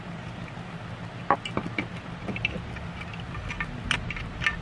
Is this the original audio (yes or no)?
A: yes